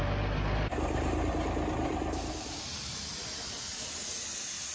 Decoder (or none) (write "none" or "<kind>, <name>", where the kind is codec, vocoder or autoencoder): none